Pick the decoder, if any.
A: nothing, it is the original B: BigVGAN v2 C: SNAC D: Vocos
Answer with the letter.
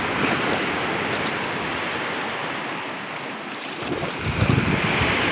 A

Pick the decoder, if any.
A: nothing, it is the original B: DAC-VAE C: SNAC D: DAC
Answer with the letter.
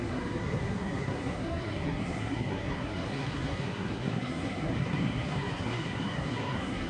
C